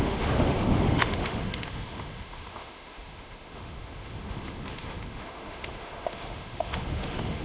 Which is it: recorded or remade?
remade